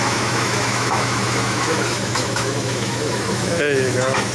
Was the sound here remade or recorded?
remade